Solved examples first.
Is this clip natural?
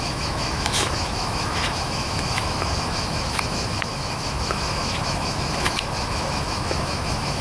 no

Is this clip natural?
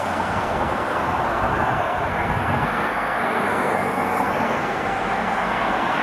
no